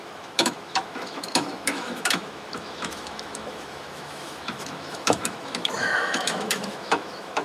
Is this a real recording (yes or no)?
no